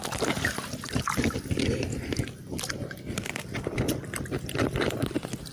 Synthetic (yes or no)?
no